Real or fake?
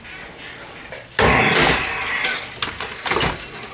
real